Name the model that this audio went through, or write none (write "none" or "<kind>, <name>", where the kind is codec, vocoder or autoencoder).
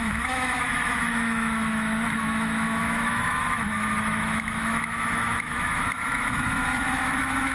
autoencoder, DAC-VAE